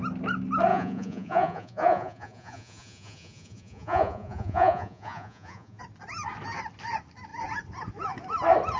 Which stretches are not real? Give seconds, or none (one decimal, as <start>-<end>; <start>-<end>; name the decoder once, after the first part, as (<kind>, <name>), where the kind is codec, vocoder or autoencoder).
0.7-5.8 (vocoder, Vocos)